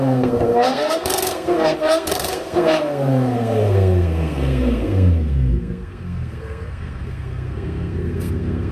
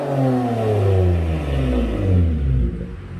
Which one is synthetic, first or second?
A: first